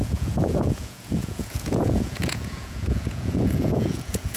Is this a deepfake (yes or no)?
yes